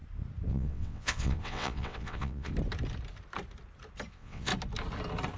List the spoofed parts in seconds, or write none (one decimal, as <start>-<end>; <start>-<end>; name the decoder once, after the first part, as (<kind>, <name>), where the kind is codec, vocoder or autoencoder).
0.5-2.5 (vocoder, WaveNeXt); 4.1-4.5